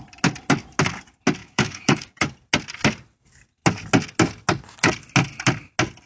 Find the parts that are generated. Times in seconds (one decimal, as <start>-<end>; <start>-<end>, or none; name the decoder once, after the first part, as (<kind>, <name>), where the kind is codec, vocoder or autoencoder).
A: 1.4-2.3 (codec, DAC)